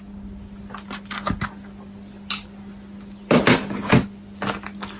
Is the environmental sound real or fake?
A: real